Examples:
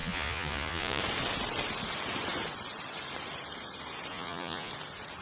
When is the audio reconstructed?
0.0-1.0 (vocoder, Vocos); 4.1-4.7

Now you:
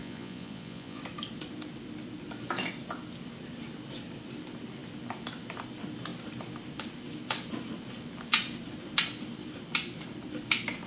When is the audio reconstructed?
0.0-1.0 (vocoder, Vocos)

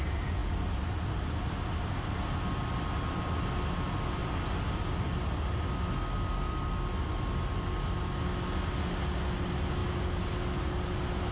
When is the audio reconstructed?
none

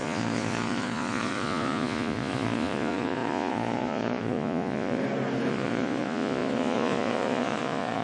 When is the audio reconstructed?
0.0-5.0 (vocoder, Vocos); 5.5-8.0

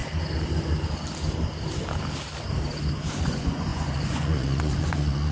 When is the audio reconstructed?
3.2-5.3 (vocoder, Vocos)

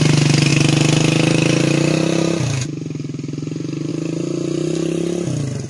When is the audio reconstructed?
none

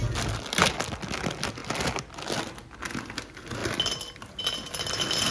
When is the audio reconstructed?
none